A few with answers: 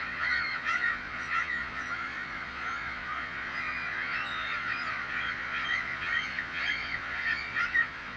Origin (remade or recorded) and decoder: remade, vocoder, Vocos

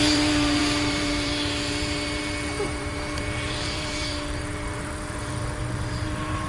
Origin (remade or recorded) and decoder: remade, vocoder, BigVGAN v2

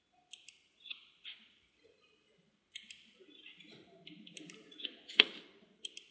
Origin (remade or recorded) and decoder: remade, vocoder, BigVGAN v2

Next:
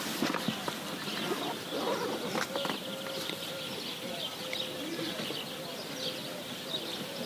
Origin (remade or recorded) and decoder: recorded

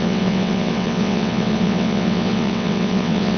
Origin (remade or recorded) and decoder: remade, vocoder, WaveNeXt